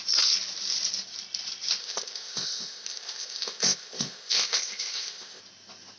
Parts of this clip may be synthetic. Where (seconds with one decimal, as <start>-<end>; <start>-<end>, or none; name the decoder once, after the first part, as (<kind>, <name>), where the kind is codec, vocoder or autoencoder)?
1.8-5.4 (codec, ZipCodec)